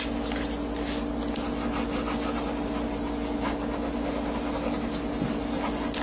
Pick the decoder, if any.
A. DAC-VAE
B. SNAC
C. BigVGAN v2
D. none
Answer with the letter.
D